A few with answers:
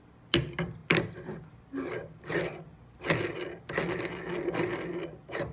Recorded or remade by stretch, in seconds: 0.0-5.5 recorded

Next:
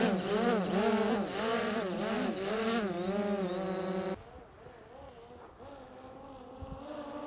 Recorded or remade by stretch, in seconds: 0.0-7.3 recorded

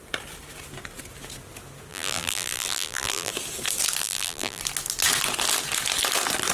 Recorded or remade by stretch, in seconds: 0.0-1.9 recorded; 1.9-3.3 remade; 3.3-4.0 recorded; 4.0-4.6 remade; 4.6-6.5 recorded

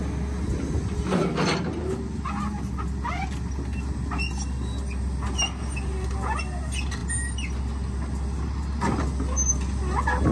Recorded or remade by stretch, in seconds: 0.0-10.3 recorded

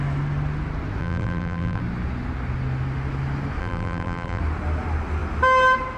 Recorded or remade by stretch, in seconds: 0.0-1.0 recorded; 1.0-1.8 remade; 1.8-3.6 recorded; 3.6-4.4 remade; 4.4-6.0 recorded